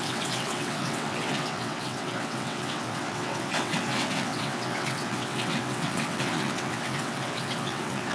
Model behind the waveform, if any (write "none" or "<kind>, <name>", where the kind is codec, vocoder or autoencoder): vocoder, WaveNeXt